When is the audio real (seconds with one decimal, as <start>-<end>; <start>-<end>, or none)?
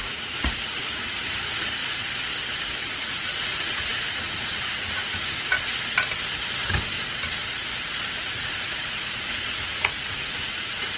1.8-2.8; 5.5-8.2